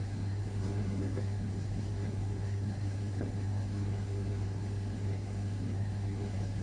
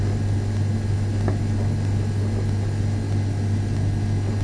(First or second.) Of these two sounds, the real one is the second